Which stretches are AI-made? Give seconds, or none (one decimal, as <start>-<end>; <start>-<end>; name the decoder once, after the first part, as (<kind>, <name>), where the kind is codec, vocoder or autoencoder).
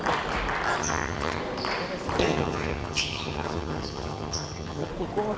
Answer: 0.8-1.4 (vocoder, HiFi-GAN); 2.2-4.9